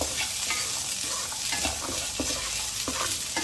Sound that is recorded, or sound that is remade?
recorded